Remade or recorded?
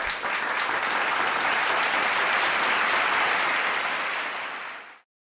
recorded